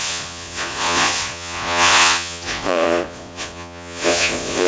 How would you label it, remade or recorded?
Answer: remade